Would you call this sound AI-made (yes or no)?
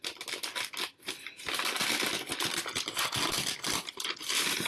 no